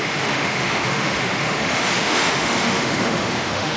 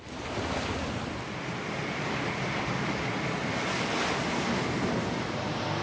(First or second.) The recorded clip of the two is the second